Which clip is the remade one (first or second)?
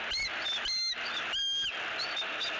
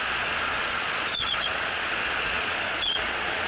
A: second